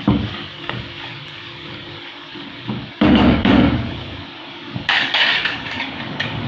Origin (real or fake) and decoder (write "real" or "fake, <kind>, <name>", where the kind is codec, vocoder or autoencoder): fake, codec, DAC